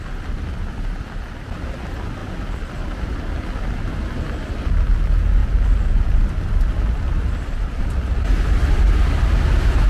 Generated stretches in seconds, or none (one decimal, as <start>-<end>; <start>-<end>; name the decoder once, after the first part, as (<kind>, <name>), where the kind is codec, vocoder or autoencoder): 5.4-7.8 (vocoder, BigVGAN v2)